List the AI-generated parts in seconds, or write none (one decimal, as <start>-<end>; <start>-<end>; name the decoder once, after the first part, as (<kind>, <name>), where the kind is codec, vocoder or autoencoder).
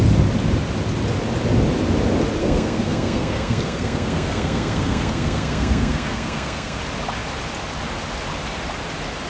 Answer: 2.4-6.8 (codec, SNAC)